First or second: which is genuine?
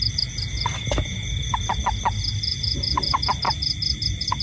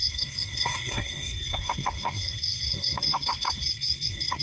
first